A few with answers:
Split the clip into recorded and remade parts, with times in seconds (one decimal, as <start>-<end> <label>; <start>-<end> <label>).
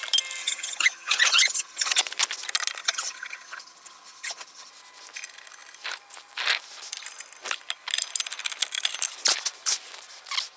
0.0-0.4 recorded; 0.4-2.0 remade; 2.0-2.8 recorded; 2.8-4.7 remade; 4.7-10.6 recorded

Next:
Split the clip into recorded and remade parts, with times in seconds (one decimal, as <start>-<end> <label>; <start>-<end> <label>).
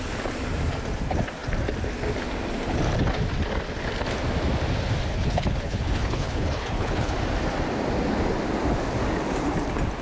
0.0-5.1 recorded; 5.1-7.1 remade; 7.1-10.0 recorded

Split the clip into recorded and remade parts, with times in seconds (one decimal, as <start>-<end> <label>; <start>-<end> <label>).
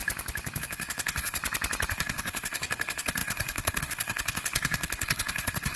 0.0-0.6 recorded; 0.6-1.4 remade; 1.4-1.9 recorded; 1.9-5.8 remade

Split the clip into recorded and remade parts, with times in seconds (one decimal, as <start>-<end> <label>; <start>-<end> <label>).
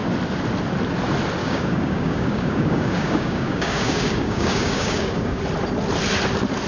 0.0-1.4 recorded; 1.4-5.4 remade; 5.4-6.7 recorded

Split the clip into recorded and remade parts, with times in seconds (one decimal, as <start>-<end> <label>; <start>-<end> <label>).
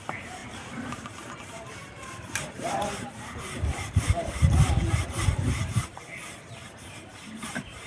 0.0-7.9 remade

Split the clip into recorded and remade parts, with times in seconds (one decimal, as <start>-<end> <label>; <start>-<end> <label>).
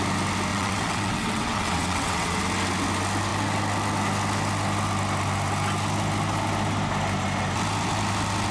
0.0-0.5 recorded; 0.5-2.4 remade; 2.4-8.5 recorded